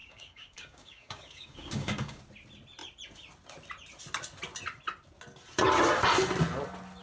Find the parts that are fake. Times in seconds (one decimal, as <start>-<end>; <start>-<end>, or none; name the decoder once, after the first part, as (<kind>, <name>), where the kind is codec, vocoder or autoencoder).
0.0-2.2 (codec, DAC)